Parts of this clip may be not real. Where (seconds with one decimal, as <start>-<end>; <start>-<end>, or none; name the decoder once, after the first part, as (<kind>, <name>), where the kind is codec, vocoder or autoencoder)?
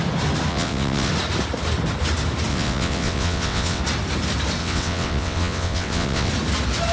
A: 0.5-1.1 (vocoder, WaveNeXt); 2.5-3.8; 4.6-6.3